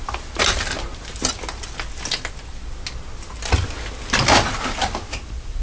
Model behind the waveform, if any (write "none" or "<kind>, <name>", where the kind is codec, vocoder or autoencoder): none